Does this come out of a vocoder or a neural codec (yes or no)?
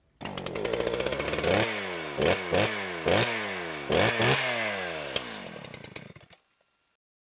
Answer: no